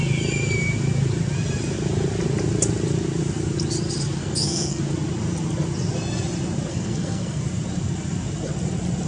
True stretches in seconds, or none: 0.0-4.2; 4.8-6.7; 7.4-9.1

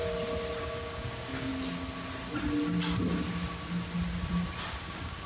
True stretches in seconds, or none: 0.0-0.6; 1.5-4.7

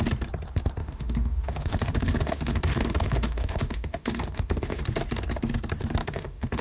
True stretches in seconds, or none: 0.0-0.8; 4.8-6.0

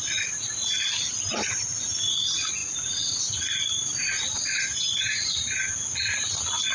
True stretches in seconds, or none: 0.0-6.7

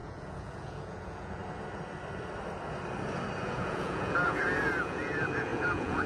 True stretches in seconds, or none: 1.4-3.4